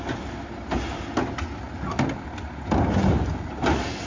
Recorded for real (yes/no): yes